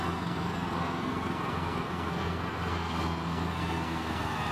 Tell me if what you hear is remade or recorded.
remade